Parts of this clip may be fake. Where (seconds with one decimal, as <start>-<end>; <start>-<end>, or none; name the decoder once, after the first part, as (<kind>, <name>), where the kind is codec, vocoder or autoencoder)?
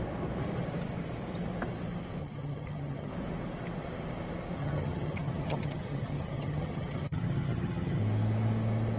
2.2-3.1 (vocoder, HiFi-GAN); 4.6-8.0